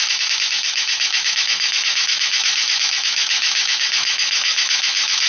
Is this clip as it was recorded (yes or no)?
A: no